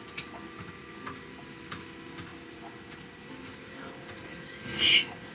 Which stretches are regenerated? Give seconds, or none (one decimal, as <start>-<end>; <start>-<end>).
none